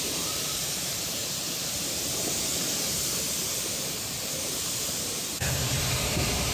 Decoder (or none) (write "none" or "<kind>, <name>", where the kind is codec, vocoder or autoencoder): vocoder, BigVGAN v2